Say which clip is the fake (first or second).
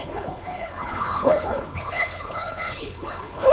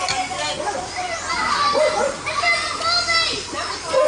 first